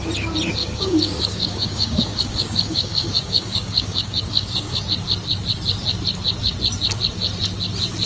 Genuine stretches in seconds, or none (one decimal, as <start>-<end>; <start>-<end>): 0.0-0.6; 4.8-8.1